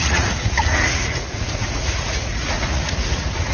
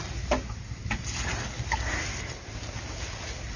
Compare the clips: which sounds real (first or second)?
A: second